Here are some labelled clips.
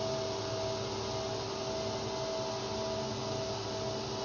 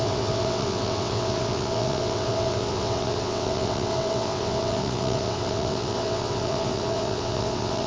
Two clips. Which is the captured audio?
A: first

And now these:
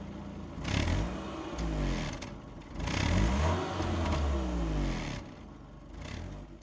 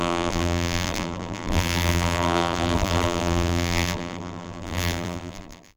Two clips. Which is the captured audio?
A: first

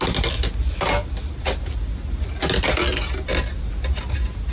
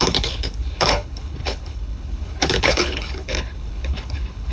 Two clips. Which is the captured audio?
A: first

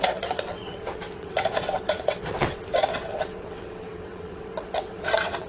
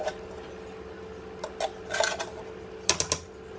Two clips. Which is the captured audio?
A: second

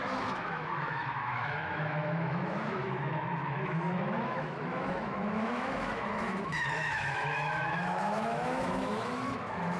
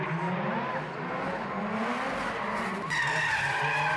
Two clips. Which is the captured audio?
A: second